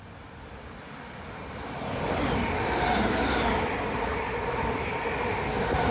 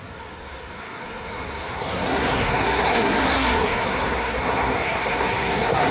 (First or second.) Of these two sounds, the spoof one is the second